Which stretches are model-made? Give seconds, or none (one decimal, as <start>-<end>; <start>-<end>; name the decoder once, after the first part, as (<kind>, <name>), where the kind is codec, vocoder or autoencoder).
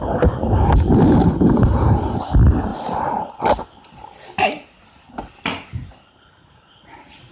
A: 2.7-4.1 (vocoder, BigVGAN v2)